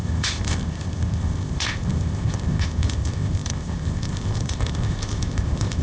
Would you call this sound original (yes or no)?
no